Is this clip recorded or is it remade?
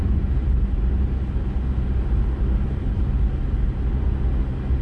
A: recorded